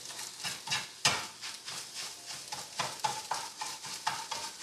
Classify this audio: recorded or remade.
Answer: recorded